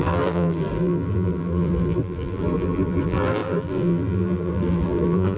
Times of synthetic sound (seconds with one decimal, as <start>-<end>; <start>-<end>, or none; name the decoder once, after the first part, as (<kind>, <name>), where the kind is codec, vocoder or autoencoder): 0.0-5.4 (vocoder, BigVGAN v2)

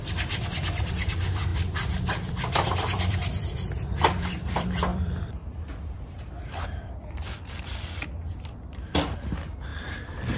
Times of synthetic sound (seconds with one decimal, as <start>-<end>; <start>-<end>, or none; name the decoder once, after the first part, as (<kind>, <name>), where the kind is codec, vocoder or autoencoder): 0.0-1.5 (vocoder, BigVGAN v2); 2.1-10.4

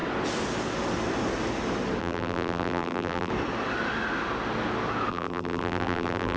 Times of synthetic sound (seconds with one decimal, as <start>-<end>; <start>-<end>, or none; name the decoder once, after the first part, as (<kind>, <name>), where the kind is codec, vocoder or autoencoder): 2.0-3.3 (vocoder, BigVGAN v2); 5.1-6.4

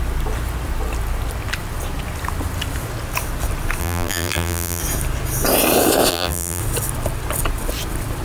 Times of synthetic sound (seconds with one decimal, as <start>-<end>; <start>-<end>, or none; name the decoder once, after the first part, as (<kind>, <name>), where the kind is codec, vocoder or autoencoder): 3.8-4.8 (vocoder, BigVGAN v2); 6.1-6.6

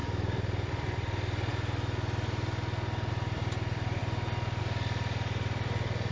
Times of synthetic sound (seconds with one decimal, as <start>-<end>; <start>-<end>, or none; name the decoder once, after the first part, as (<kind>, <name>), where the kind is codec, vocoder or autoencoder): 0.0-1.5 (vocoder, BigVGAN v2); 3.1-4.0; 4.6-6.1

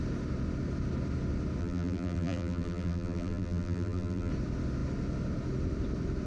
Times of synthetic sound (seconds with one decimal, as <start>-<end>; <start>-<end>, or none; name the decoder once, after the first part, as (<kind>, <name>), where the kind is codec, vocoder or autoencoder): 1.6-4.3 (vocoder, BigVGAN v2)

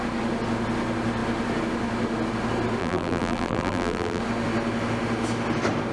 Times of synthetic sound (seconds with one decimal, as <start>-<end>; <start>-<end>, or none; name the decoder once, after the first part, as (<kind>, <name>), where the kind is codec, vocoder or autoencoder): 2.8-4.2 (vocoder, BigVGAN v2)

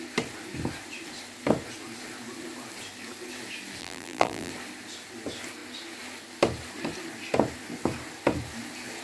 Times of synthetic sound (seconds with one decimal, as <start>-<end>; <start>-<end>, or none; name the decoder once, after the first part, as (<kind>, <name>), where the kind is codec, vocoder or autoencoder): 3.8-4.5 (vocoder, BigVGAN v2)